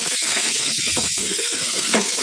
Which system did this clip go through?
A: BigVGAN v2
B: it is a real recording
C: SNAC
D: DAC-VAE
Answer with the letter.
C